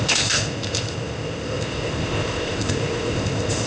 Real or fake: fake